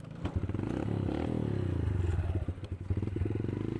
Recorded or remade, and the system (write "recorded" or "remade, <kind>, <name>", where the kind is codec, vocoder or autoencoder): recorded